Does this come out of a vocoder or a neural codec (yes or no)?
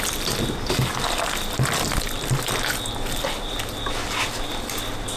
no